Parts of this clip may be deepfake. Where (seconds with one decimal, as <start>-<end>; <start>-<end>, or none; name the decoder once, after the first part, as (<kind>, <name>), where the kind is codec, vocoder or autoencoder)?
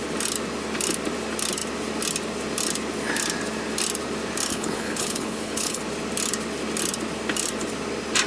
4.5-5.8 (codec, HILCodec)